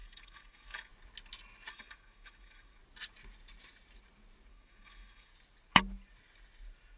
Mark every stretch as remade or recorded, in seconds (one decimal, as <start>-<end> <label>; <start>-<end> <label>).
0.0-0.9 remade; 0.9-1.7 recorded; 1.7-2.8 remade; 2.8-4.5 recorded; 4.5-5.3 remade; 5.3-7.0 recorded